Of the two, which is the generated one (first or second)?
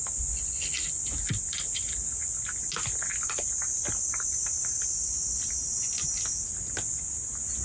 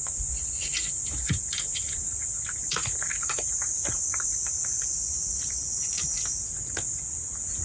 second